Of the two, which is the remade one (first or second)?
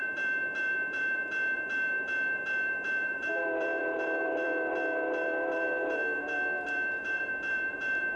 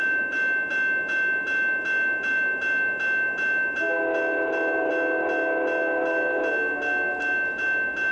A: first